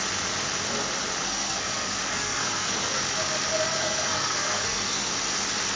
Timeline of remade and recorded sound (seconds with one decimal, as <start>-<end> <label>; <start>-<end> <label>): 0.0-1.2 recorded; 1.2-3.0 remade; 3.0-3.8 recorded; 3.8-5.1 remade; 5.1-5.8 recorded